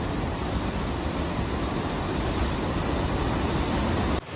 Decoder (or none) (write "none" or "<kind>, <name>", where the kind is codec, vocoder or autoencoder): none